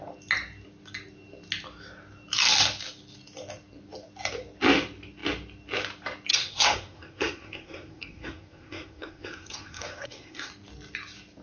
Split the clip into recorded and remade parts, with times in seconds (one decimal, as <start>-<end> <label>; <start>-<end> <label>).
0.0-6.3 recorded; 6.3-10.5 remade; 10.5-11.4 recorded